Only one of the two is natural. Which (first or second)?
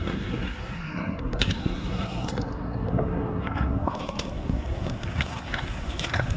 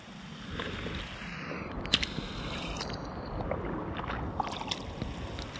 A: second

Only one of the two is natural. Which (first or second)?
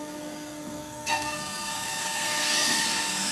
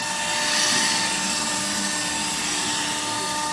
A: second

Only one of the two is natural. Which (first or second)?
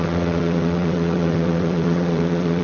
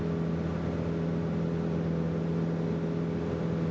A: second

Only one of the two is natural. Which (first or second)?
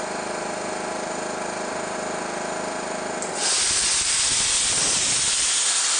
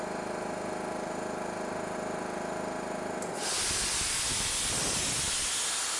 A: second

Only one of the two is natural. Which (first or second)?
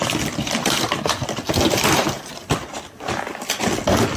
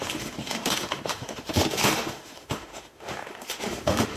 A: first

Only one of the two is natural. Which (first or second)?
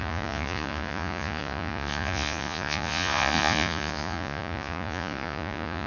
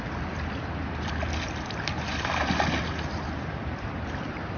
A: second